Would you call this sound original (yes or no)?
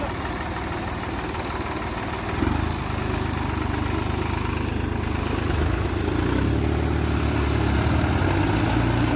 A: yes